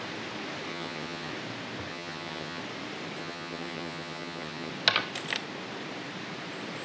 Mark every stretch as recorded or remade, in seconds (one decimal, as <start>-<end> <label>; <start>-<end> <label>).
0.0-0.7 recorded; 0.7-1.3 remade; 1.3-1.9 recorded; 1.9-2.6 remade; 2.6-3.2 recorded; 3.2-4.7 remade; 4.7-6.8 recorded

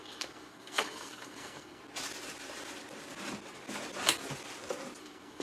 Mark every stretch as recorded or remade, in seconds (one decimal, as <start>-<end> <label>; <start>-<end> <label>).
0.0-1.8 remade; 1.8-5.0 recorded; 5.0-5.4 remade